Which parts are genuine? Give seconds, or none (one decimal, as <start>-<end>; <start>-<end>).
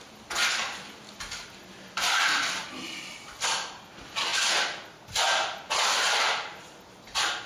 4.3-4.9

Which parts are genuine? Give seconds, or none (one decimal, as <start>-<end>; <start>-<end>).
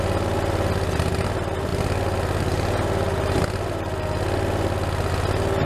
0.0-5.7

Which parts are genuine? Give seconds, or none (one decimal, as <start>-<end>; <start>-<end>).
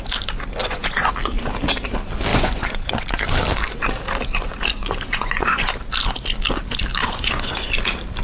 0.0-0.6; 1.1-2.3; 3.2-4.8; 5.7-6.9; 7.7-8.2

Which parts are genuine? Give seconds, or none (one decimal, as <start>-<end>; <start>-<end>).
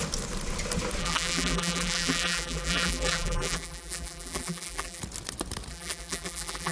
0.0-1.0; 5.0-5.7